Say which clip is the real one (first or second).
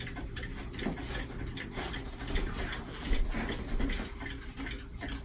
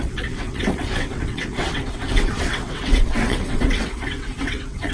first